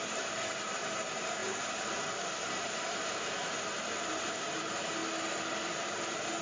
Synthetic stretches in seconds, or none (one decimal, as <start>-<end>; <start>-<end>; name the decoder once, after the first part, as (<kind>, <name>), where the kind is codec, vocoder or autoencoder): 0.0-1.4 (vocoder, BigVGAN v2); 2.0-5.0; 5.7-6.4